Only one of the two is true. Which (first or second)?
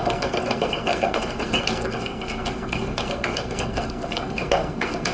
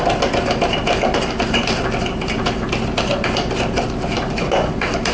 second